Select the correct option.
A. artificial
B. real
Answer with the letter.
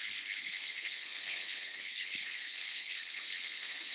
A